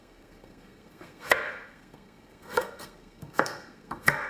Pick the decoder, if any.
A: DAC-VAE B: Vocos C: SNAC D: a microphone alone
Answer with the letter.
C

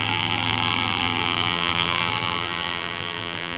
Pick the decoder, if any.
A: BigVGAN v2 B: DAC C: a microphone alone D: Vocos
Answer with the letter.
A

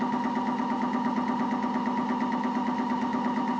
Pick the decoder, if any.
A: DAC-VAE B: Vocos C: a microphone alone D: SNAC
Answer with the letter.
C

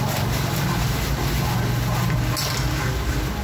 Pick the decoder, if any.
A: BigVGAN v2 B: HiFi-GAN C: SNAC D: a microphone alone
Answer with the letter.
D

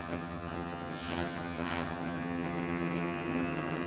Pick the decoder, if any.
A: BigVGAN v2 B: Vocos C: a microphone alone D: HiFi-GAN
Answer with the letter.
D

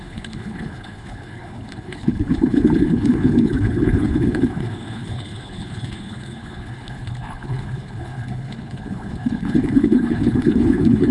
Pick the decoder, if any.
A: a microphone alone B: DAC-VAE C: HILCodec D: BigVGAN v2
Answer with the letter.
C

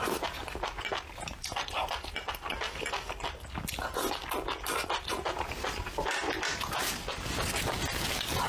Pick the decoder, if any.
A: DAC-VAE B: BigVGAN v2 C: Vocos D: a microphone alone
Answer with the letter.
D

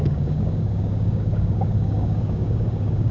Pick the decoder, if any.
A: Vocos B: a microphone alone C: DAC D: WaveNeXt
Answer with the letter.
C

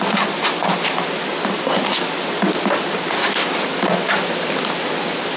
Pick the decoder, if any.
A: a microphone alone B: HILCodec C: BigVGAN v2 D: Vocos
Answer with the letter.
A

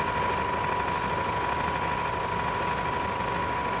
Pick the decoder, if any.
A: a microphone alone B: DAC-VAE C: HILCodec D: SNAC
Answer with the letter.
A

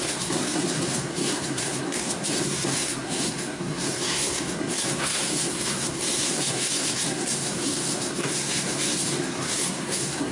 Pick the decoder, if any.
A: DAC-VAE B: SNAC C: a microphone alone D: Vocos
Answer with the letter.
B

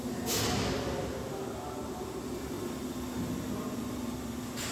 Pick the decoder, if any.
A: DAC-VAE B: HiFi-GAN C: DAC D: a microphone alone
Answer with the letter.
D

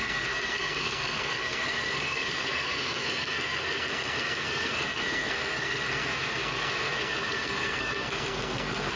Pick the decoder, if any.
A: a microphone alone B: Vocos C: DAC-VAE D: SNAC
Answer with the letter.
D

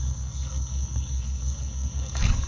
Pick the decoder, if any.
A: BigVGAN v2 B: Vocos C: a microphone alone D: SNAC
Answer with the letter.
D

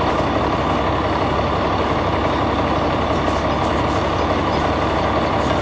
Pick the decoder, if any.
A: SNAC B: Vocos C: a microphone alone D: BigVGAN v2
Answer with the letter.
C